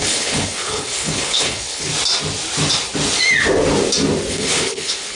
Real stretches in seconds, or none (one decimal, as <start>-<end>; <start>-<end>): 1.9-4.3